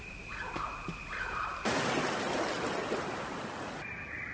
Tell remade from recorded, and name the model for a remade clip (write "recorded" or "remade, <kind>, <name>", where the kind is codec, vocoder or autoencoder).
recorded